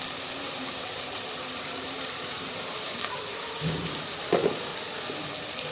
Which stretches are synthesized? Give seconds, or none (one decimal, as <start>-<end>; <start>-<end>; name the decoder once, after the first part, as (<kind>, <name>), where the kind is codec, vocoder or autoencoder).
0.0-4.7 (vocoder, BigVGAN v2)